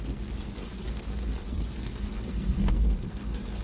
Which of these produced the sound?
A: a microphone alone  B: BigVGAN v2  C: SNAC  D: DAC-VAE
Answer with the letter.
C